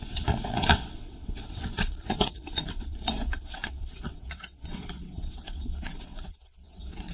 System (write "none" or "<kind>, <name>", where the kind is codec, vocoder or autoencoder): vocoder, WaveNeXt